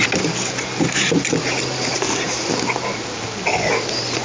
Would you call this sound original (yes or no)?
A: yes